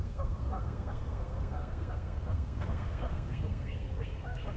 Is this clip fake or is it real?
fake